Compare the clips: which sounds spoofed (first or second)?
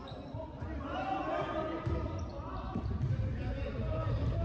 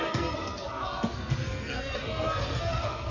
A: second